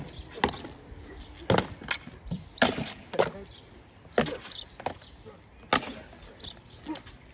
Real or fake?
real